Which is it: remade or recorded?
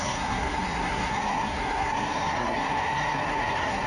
remade